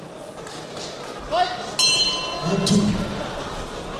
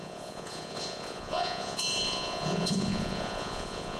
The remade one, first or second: second